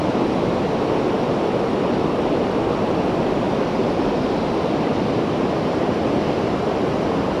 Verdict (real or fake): real